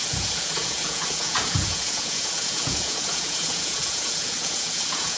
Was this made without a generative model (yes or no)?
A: no